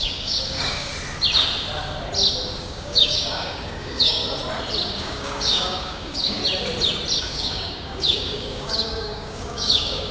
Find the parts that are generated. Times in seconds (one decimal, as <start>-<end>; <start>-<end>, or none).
0.0-0.9; 2.6-4.2; 4.9-6.4; 7.2-10.1